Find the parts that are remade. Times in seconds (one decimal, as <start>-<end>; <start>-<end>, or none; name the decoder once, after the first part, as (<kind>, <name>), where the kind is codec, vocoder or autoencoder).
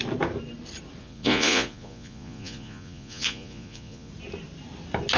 1.0-4.1 (vocoder, Vocos)